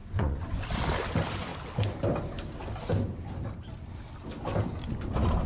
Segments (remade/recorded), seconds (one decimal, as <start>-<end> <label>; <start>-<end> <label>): 0.0-0.6 remade; 0.6-5.5 recorded